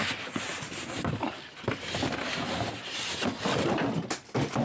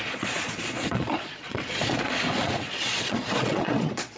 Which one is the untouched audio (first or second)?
first